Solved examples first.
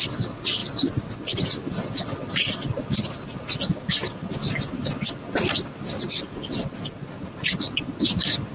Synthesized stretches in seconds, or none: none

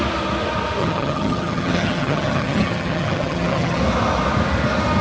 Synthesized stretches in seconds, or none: 0.8-3.8 (vocoder, HiFi-GAN)

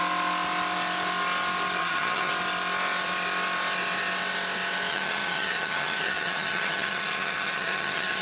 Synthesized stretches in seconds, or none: 1.8-2.3 (vocoder, HiFi-GAN); 4.9-8.2

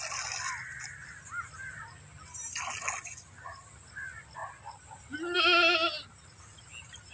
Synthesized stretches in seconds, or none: none

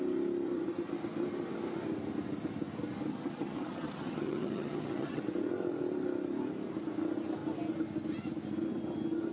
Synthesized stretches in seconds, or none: 3.1-5.2 (vocoder, HiFi-GAN)

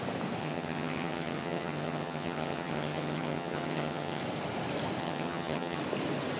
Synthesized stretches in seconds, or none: 0.4-4.2 (vocoder, HiFi-GAN); 5.0-5.8